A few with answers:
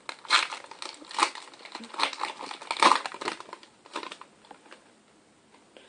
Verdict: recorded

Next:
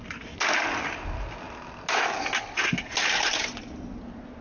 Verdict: recorded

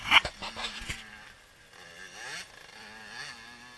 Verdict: recorded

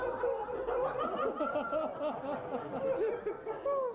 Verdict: recorded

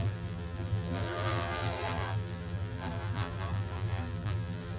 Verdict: remade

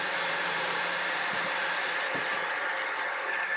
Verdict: remade